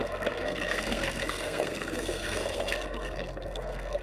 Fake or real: fake